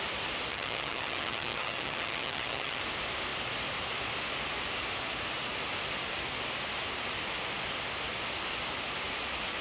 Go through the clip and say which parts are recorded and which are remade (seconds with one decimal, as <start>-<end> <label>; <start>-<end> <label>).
0.0-0.5 recorded; 0.5-2.8 remade; 2.8-9.6 recorded